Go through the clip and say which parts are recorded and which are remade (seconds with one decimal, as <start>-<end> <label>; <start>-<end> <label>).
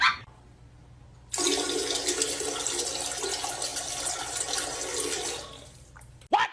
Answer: 0.0-6.5 recorded